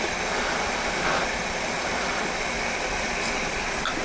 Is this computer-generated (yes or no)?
no